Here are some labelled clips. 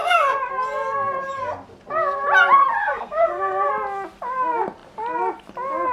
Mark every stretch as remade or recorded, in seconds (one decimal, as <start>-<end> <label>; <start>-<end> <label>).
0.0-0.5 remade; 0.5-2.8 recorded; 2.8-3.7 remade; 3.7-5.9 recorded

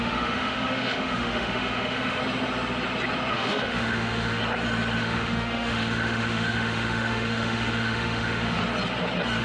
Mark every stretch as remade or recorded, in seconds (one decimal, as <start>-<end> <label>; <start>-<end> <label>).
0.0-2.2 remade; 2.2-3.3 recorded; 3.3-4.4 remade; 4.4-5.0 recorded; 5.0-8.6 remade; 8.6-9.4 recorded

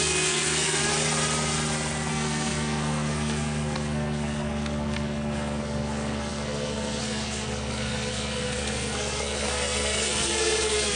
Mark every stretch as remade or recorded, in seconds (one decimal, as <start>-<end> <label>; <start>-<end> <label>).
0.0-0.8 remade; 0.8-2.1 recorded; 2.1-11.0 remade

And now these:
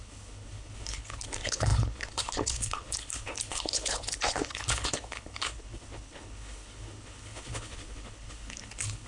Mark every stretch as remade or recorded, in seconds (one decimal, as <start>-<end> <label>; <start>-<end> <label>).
0.0-9.1 remade

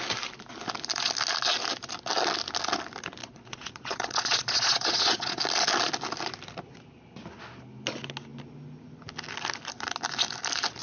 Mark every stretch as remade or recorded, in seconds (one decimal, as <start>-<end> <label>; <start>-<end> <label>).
0.0-3.2 recorded; 3.2-5.4 remade; 5.4-10.8 recorded

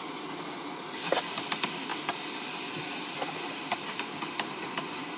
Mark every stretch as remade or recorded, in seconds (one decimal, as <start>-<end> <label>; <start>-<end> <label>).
0.0-5.2 recorded

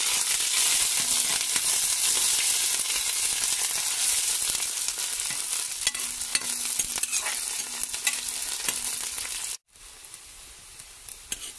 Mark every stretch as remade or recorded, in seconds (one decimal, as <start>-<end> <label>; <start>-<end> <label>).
0.0-11.6 recorded